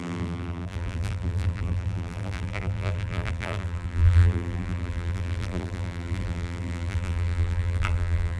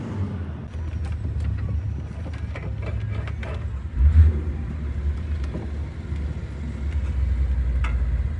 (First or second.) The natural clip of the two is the second